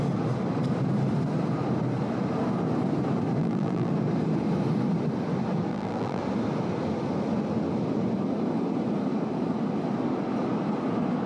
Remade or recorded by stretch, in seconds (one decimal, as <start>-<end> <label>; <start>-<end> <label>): 0.0-3.4 recorded; 3.4-3.9 remade; 3.9-5.7 recorded; 5.7-6.2 remade; 6.2-11.3 recorded

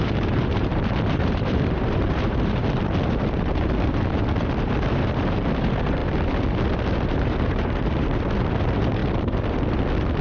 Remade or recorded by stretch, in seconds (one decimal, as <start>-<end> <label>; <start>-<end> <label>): 0.0-6.0 remade; 6.0-7.1 recorded; 7.1-9.0 remade; 9.0-10.2 recorded

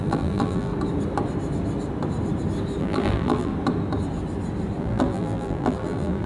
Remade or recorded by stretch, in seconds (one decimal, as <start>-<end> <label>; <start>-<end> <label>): 0.0-0.7 remade; 0.7-2.8 recorded; 2.8-3.5 remade; 3.5-4.8 recorded; 4.8-6.3 remade